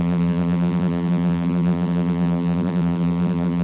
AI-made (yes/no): yes